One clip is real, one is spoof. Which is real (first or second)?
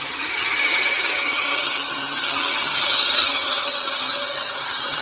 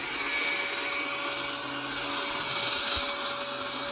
second